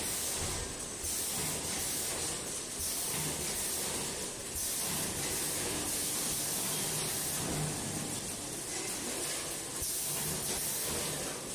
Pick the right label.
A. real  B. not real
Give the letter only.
A